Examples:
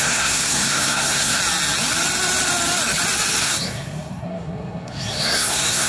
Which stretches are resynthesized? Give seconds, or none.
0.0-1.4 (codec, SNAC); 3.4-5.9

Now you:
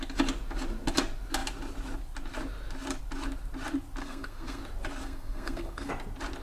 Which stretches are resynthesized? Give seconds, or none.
4.0-4.6 (codec, SNAC); 5.0-5.9

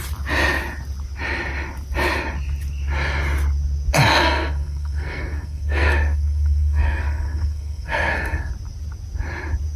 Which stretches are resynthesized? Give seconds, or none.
4.1-8.5 (codec, SNAC)

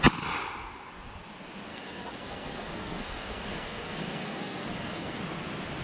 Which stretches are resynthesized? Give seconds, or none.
1.7-5.2 (codec, SNAC)

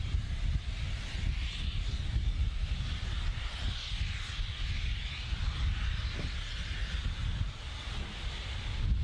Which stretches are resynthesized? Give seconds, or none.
none

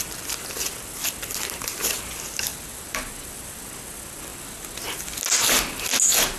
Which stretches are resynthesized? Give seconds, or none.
none

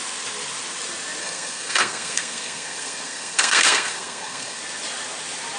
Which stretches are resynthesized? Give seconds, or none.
1.2-4.6 (codec, SNAC)